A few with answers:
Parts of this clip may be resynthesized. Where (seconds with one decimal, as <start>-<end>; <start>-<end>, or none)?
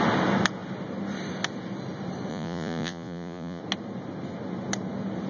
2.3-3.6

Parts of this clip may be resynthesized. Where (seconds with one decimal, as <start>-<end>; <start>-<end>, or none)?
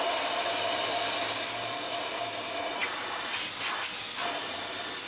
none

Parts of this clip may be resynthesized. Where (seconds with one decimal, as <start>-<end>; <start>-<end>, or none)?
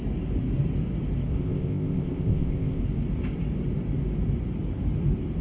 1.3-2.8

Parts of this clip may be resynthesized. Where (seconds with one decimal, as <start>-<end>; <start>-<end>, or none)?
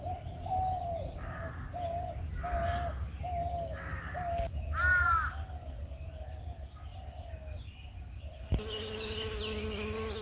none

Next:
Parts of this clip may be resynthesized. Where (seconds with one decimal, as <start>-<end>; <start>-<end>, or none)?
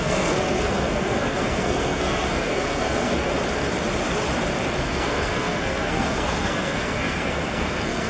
0.0-3.3; 4.8-8.1